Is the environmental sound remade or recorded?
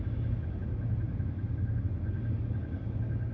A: recorded